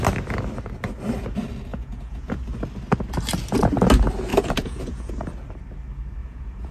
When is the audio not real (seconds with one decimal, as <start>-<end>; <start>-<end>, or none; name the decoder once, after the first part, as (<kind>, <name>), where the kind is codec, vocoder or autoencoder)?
1.7-2.5 (vocoder, Vocos); 4.3-5.1; 6.2-6.7